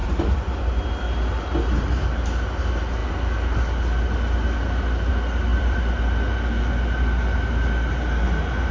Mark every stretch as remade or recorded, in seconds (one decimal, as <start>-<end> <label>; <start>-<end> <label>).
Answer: 0.0-5.5 recorded; 5.5-6.0 remade; 6.0-8.7 recorded